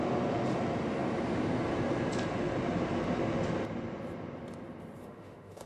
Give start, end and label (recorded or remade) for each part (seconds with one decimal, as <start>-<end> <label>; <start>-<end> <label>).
0.0-5.0 recorded; 5.0-5.7 remade